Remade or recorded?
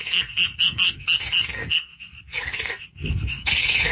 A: remade